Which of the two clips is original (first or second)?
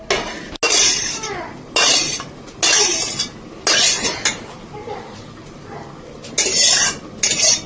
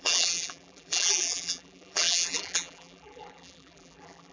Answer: first